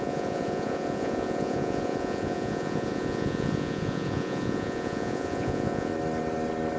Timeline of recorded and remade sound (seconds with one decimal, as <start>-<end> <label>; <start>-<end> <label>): 0.0-5.9 remade; 5.9-6.8 recorded

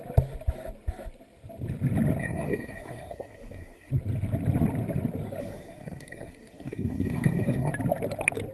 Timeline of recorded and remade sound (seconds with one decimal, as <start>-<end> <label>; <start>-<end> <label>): 0.0-2.2 recorded; 2.2-3.9 remade; 3.9-5.4 recorded; 5.4-7.7 remade; 7.7-8.5 recorded

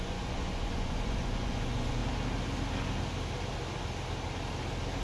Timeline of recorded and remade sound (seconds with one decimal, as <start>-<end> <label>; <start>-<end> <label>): 0.0-2.0 remade; 2.0-5.0 recorded